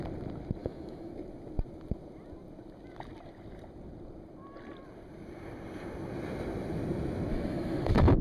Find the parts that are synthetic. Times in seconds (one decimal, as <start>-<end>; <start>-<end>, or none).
0.6-1.1; 7.3-8.2